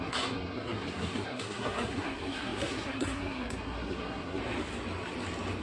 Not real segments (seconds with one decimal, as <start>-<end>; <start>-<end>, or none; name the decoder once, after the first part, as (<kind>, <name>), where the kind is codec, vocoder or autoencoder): 0.0-4.4 (codec, SNAC)